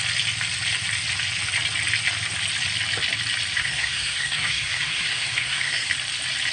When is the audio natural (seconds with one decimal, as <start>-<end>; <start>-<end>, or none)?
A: 0.0-3.6; 5.9-6.5